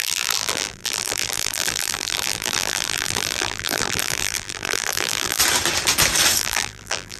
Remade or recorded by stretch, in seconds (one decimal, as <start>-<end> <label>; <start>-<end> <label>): 0.0-5.4 remade; 5.4-6.4 recorded; 6.4-7.2 remade